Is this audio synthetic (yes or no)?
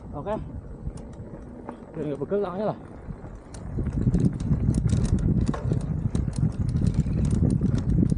no